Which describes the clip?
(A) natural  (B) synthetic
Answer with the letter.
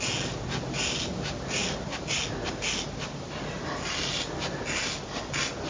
A